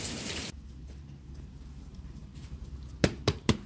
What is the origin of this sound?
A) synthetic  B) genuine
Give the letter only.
A